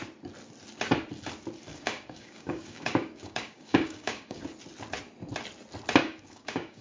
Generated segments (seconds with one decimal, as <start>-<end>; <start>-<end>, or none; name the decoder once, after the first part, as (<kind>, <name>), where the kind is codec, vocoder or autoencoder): 1.7-4.4 (codec, DAC); 6.0-6.8